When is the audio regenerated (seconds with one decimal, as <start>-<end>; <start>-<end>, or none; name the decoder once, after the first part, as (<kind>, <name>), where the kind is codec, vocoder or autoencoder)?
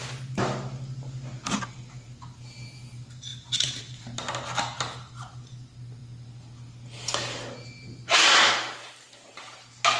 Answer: none